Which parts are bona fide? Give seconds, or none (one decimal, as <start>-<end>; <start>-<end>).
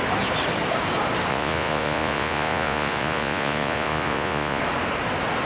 0.0-1.3; 4.6-5.5